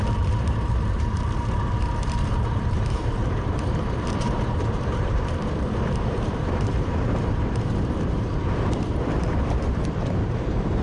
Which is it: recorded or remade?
remade